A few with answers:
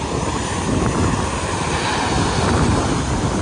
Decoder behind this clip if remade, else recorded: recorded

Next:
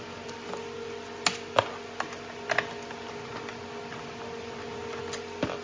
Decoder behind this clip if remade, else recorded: recorded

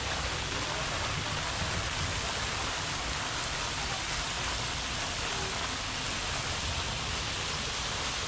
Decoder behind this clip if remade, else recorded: recorded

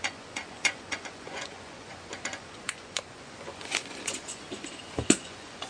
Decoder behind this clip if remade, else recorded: remade, vocoder, Vocos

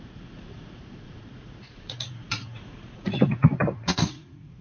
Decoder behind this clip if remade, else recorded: remade, vocoder, Vocos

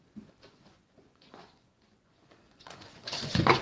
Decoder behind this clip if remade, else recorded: remade, vocoder, Vocos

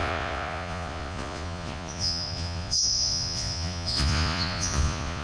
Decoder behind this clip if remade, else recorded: remade, vocoder, Vocos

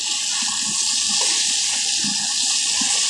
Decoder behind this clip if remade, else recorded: recorded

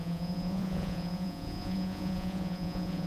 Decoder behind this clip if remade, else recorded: remade, vocoder, Vocos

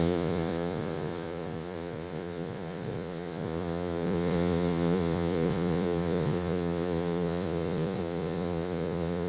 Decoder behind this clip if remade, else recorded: remade, vocoder, Vocos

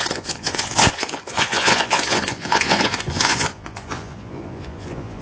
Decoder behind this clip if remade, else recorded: remade, vocoder, Vocos